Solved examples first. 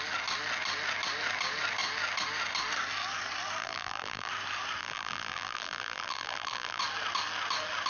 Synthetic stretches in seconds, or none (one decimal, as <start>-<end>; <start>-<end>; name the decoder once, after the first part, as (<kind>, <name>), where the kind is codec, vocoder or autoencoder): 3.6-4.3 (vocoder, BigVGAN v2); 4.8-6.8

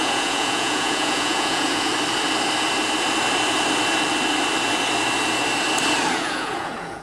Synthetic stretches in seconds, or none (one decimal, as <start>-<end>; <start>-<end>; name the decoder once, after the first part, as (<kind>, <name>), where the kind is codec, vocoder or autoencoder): 0.0-1.9 (vocoder, Vocos); 6.1-7.0

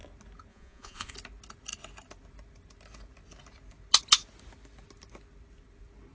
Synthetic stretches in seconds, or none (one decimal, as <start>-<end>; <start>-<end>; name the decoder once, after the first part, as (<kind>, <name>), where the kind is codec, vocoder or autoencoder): 0.5-1.1 (vocoder, Vocos)

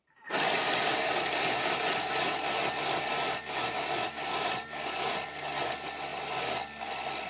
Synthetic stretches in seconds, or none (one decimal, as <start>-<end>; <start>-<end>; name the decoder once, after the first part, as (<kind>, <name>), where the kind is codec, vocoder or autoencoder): 3.1-5.4 (vocoder, BigVGAN v2); 6.1-7.3

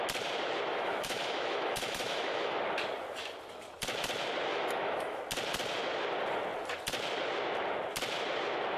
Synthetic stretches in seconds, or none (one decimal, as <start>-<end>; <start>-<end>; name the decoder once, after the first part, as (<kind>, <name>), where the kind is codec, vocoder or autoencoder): 0.7-2.6 (autoencoder, DAC-VAE); 4.5-5.2

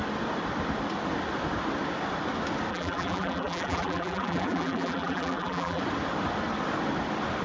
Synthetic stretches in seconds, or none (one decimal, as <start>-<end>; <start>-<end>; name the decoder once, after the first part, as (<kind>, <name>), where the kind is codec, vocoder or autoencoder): 2.7-5.8 (vocoder, BigVGAN v2)

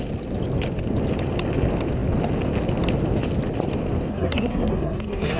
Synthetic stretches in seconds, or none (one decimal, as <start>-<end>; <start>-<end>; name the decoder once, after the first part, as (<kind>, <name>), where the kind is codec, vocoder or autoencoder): 4.1-5.4 (codec, SNAC)